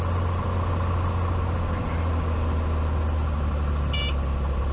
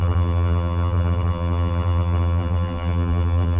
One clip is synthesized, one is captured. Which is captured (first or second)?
first